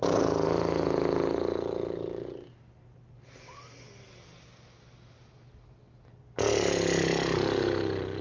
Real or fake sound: real